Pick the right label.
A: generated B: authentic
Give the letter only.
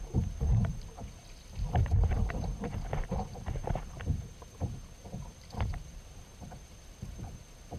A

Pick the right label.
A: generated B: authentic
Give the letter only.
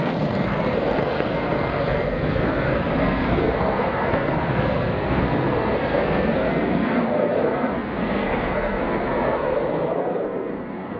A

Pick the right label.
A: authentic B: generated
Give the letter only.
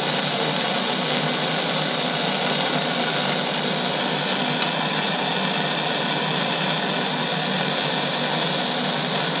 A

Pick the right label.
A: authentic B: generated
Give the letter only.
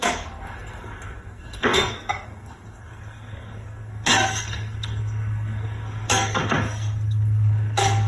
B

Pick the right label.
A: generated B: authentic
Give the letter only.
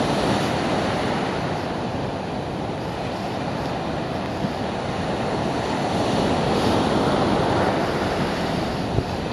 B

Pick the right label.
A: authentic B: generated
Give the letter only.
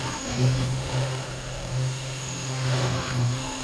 B